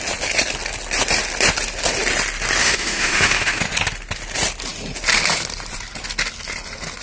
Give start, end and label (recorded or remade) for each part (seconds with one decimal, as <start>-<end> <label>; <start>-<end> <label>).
0.0-2.6 recorded; 2.6-3.6 remade; 3.6-7.0 recorded